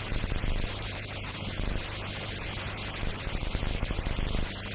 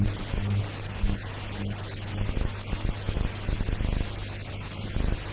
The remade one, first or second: first